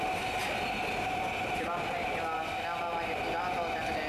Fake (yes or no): no